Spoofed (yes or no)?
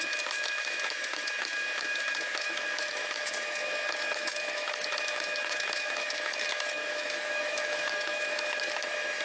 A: yes